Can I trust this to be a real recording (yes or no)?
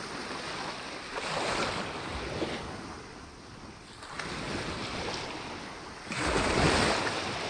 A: yes